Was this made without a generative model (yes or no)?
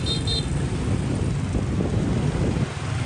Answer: yes